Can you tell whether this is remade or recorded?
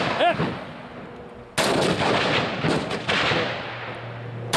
recorded